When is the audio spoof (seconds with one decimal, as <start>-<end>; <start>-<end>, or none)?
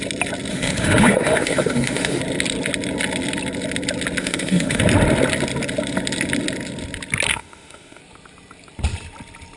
0.5-2.2; 4.2-4.8; 7.3-8.0